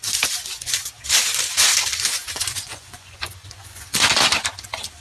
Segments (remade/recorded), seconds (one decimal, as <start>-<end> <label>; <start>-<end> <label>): 0.0-0.4 recorded; 0.4-0.9 remade; 0.9-2.2 recorded; 2.2-4.1 remade; 4.1-5.0 recorded